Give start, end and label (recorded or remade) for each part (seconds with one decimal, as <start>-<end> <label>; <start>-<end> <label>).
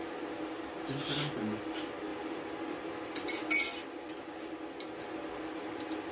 0.0-6.1 recorded